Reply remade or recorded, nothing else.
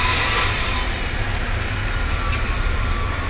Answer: recorded